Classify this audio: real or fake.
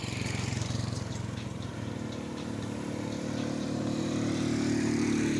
fake